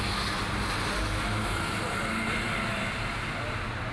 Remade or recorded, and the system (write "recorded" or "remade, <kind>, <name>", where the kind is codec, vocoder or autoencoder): recorded